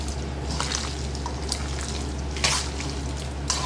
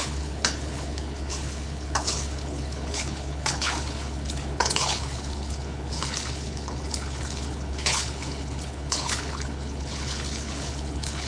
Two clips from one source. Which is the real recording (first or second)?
first